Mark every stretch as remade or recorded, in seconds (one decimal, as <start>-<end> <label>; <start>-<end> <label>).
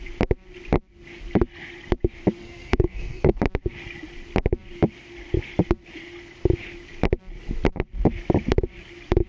0.0-2.4 recorded; 2.4-3.4 remade; 3.4-9.3 recorded